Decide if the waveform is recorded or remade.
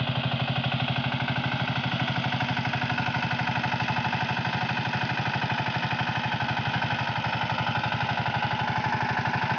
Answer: recorded